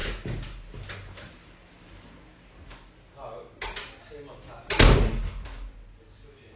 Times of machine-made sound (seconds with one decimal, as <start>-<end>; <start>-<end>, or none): none